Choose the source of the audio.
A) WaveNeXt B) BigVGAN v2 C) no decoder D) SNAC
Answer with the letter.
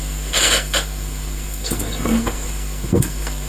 D